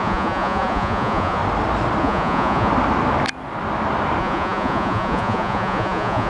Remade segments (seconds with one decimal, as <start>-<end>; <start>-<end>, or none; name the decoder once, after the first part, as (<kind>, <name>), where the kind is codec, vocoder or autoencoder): 0.0-1.4 (vocoder, Vocos); 2.0-2.7; 4.2-6.3